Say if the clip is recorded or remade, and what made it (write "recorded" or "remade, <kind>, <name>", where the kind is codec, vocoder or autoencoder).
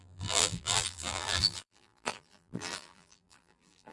remade, vocoder, BigVGAN v2